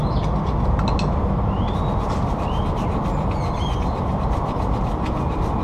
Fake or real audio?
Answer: real